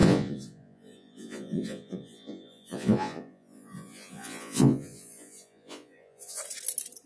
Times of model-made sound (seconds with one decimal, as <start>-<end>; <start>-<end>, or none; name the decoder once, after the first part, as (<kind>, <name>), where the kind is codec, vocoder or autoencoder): 0.0-6.4 (vocoder, Vocos)